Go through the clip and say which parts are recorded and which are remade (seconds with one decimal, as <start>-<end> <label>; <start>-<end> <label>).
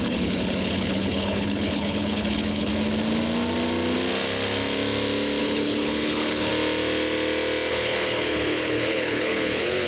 0.0-2.7 remade; 2.7-5.4 recorded; 5.4-6.5 remade; 6.5-7.7 recorded; 7.7-9.9 remade